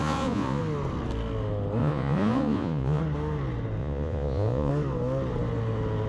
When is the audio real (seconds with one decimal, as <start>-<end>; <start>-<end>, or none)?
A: 0.6-1.8; 3.0-3.8; 4.7-6.1